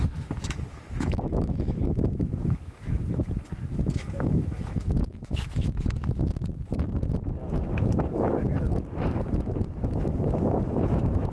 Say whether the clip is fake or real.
fake